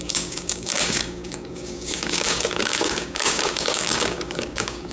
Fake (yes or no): yes